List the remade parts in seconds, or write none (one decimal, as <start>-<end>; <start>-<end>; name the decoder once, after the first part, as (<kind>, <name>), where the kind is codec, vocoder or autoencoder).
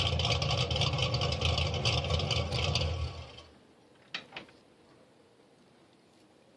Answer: none